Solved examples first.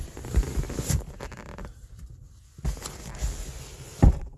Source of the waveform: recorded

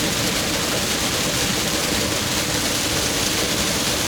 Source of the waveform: recorded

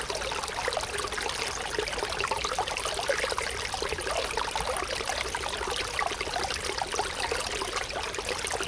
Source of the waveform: recorded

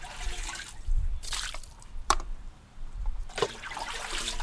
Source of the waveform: remade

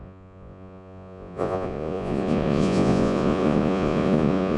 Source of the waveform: remade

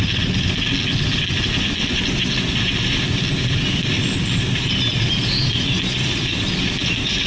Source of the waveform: recorded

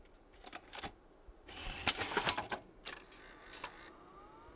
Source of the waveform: recorded